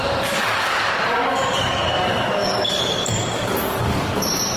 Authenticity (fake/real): fake